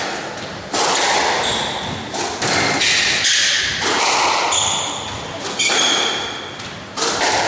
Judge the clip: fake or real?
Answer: real